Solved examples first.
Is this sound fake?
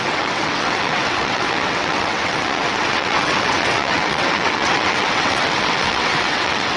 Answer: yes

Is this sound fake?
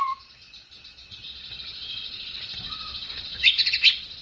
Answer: yes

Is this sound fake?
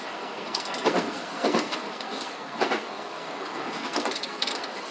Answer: yes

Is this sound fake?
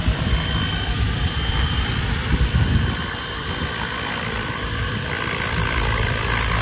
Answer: yes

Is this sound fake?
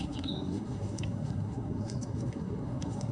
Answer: yes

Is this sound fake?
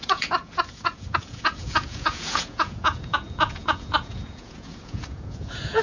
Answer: yes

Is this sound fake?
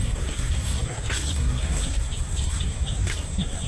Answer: yes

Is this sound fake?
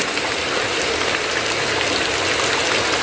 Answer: no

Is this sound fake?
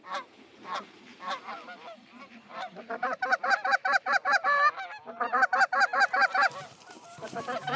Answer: yes